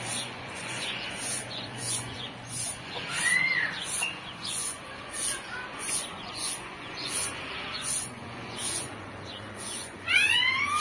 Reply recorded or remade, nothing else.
remade